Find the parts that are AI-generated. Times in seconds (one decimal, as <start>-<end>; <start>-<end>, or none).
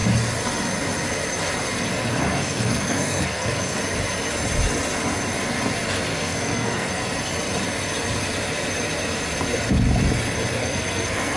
2.1-3.8; 6.1-7.0; 10.6-11.4